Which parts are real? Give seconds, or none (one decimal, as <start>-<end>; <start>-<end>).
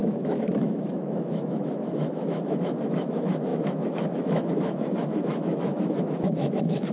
none